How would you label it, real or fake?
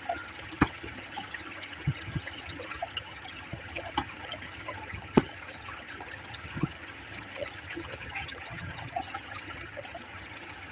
fake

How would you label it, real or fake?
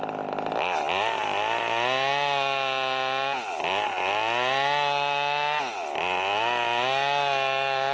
real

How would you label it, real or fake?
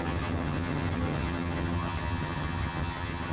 fake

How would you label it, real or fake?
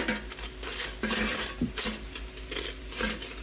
real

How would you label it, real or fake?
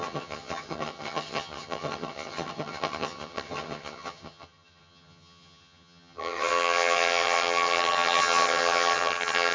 fake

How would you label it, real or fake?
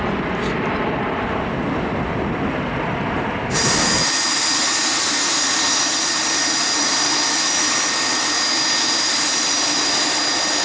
real